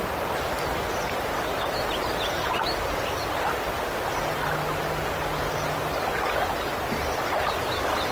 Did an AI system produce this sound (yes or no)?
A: no